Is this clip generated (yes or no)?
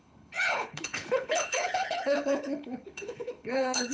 yes